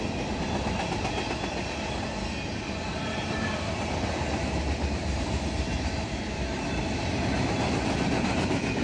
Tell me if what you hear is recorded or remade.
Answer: recorded